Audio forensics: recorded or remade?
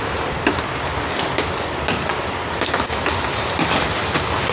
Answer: recorded